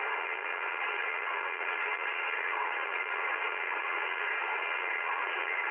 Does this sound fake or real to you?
fake